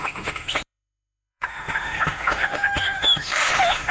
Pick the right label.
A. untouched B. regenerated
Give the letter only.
B